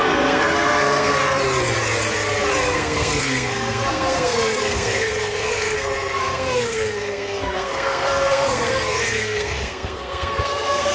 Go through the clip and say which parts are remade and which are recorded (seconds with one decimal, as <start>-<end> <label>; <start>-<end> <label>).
0.0-1.2 remade; 1.2-2.6 recorded; 2.6-10.9 remade